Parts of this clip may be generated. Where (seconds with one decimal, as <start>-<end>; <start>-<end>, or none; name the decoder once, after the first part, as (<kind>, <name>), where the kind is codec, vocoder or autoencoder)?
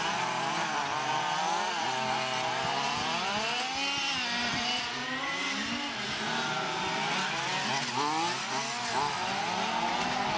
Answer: 4.4-6.0 (vocoder, BigVGAN v2)